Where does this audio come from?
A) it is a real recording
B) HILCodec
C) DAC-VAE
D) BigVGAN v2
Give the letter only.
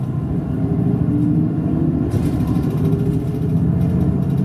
A